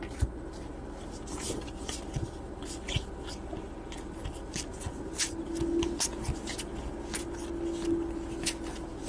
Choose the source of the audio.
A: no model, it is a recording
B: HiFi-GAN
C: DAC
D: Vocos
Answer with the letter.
A